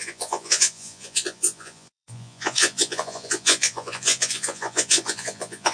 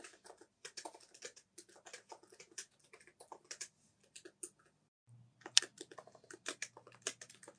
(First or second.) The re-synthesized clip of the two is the first